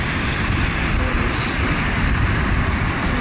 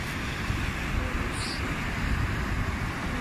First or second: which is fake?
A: first